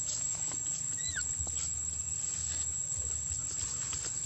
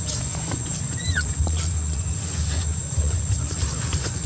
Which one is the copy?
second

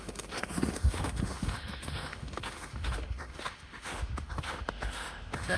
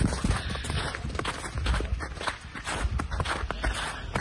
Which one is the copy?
first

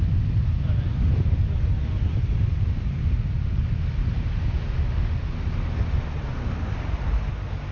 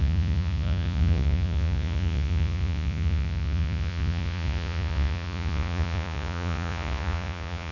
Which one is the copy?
second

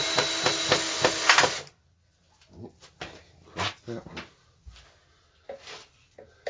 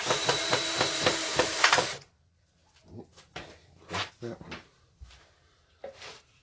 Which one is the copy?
second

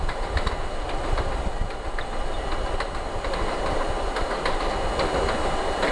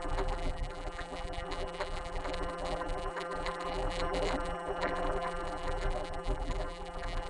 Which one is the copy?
second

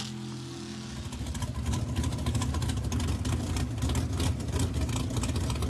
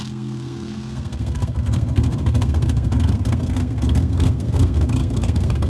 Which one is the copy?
second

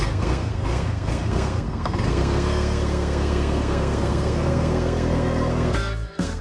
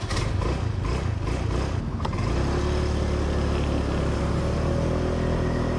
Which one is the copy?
first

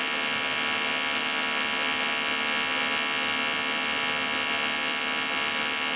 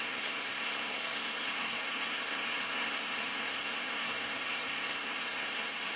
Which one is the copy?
second